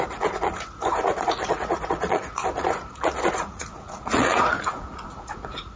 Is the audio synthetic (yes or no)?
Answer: yes